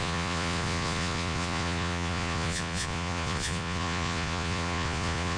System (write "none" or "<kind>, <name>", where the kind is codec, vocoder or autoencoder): vocoder, Vocos